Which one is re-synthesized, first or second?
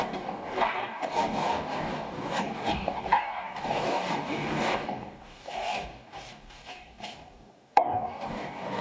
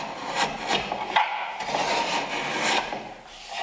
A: first